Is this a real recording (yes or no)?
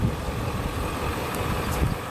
yes